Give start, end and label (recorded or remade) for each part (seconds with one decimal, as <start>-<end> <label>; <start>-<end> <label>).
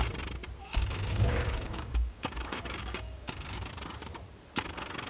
0.0-0.6 recorded; 0.6-3.7 remade; 3.7-5.1 recorded